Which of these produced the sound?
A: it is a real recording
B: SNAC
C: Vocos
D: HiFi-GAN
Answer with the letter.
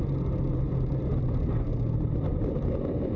A